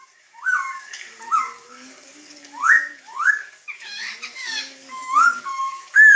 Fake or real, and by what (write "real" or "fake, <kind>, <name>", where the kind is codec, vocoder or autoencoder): fake, codec, DAC